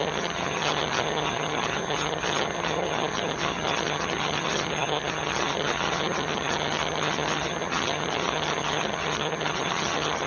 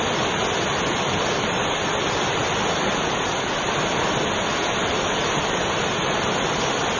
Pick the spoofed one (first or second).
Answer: first